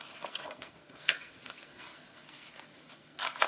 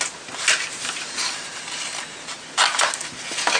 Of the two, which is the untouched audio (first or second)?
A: second